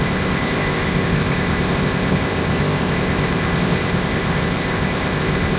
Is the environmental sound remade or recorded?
remade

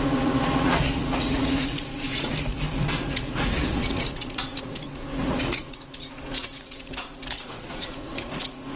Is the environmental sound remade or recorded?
remade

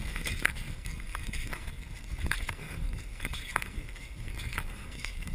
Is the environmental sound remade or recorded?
remade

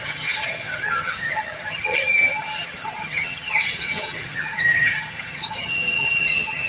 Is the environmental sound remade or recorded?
remade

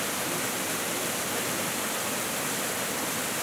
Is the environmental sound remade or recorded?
recorded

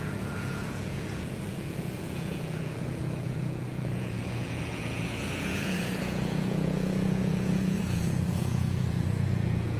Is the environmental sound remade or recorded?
remade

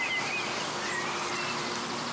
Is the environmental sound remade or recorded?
recorded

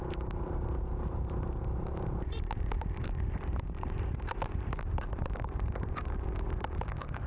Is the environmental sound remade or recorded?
remade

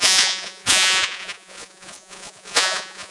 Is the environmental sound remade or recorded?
remade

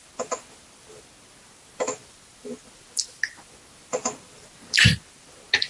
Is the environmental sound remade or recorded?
recorded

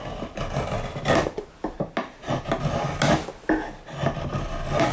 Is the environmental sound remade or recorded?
recorded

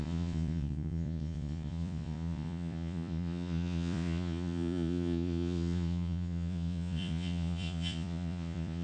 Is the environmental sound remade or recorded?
remade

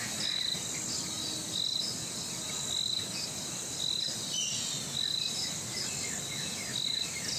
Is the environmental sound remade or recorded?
recorded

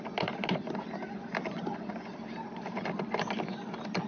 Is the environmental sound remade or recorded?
recorded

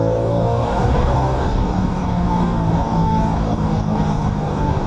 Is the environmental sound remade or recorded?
remade